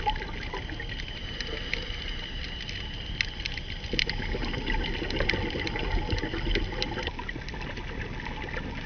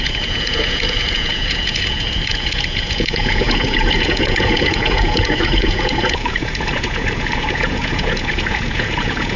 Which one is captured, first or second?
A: first